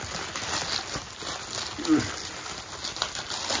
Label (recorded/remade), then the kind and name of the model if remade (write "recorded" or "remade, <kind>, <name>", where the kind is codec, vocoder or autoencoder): recorded